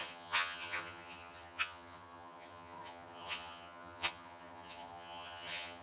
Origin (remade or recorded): remade